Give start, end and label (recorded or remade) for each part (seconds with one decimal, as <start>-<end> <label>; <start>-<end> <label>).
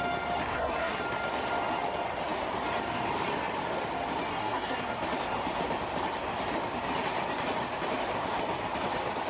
0.0-0.4 recorded; 0.4-1.0 remade; 1.0-4.3 recorded; 4.3-5.0 remade; 5.0-9.3 recorded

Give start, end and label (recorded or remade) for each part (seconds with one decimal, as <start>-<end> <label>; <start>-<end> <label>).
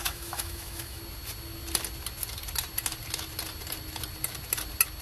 0.0-1.0 remade; 1.0-5.0 recorded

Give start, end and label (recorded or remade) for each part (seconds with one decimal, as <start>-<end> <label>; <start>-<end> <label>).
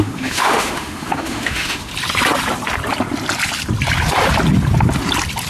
0.0-1.9 remade; 1.9-5.5 recorded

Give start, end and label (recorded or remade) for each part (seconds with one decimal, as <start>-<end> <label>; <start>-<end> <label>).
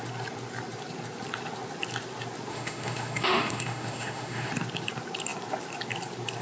0.0-2.5 recorded; 2.5-4.5 remade; 4.5-6.4 recorded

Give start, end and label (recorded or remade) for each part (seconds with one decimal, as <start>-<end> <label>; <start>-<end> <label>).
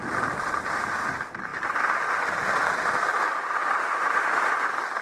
0.0-5.0 recorded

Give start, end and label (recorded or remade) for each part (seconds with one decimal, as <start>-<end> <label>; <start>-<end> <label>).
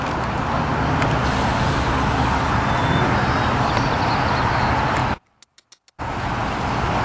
0.0-5.0 recorded; 5.0-6.0 remade; 6.0-7.0 recorded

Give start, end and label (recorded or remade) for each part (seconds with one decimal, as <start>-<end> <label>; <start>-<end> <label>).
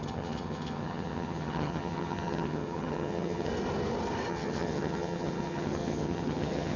0.0-3.5 remade; 3.5-4.3 recorded; 4.3-6.8 remade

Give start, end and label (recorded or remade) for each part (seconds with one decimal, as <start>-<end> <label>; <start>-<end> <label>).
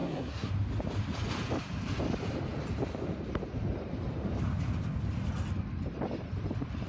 0.0-0.5 remade; 0.5-6.9 recorded